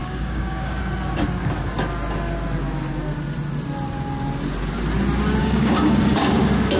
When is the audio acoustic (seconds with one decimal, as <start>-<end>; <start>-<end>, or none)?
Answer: 0.8-5.4; 6.3-6.8